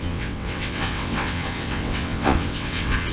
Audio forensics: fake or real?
fake